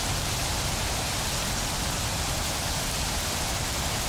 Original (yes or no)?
yes